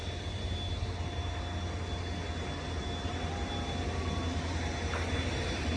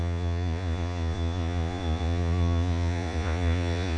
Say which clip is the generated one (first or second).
second